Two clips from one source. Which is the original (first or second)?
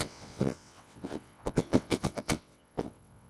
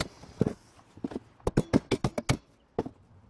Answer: second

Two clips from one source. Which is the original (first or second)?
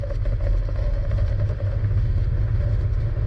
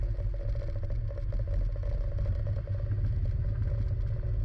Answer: second